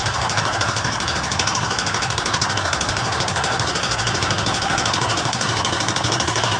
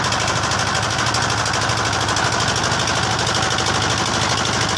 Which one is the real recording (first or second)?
second